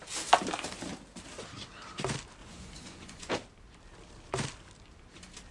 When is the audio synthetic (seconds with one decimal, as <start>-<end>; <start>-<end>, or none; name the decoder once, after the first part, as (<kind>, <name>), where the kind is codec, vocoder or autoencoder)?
2.4-3.3 (vocoder, Vocos)